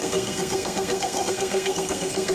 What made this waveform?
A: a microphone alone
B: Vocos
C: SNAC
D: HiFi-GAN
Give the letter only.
C